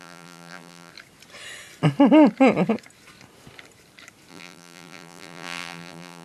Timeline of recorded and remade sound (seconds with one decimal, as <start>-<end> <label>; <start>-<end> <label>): 0.0-0.9 remade; 0.9-4.3 recorded; 4.3-6.2 remade